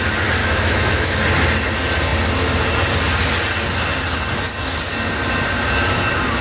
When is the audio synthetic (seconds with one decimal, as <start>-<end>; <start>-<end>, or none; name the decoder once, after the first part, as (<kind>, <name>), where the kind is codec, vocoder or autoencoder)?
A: 0.4-1.1 (autoencoder, DAC-VAE)